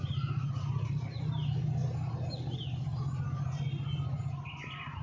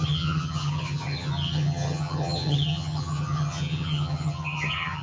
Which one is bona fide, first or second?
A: first